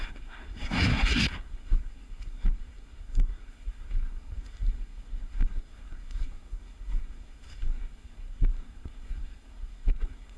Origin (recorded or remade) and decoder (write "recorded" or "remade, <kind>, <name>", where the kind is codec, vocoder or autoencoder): remade, codec, SNAC